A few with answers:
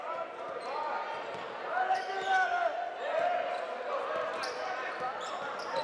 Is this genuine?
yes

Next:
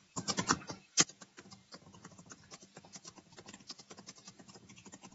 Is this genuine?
no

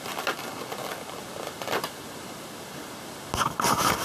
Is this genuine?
yes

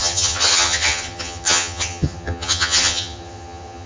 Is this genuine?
no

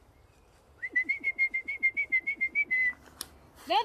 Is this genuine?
yes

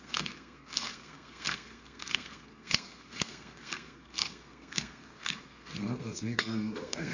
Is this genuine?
no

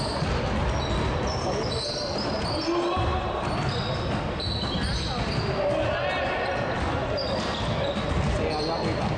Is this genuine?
yes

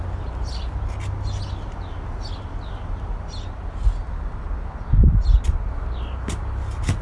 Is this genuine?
yes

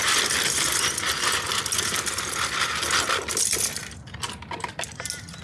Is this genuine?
yes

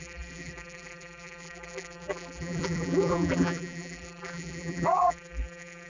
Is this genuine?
no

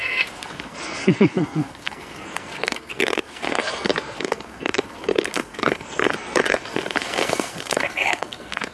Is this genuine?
no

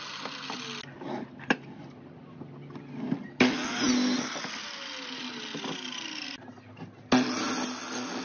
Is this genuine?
yes